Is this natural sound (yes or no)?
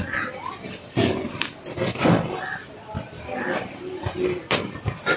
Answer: yes